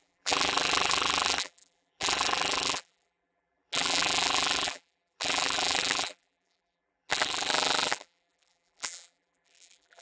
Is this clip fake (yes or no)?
yes